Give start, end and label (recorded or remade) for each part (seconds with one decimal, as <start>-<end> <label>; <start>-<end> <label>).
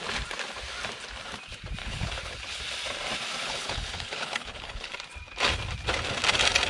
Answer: 0.0-1.8 recorded; 1.8-2.6 remade; 2.6-3.4 recorded; 3.4-4.9 remade; 4.9-6.7 recorded